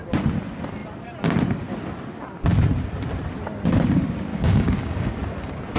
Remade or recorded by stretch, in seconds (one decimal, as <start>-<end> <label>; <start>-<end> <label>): 0.0-4.3 recorded; 4.3-5.1 remade; 5.1-5.8 recorded